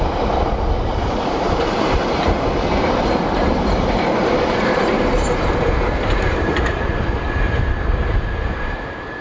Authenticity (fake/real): fake